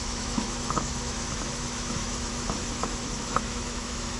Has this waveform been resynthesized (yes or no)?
yes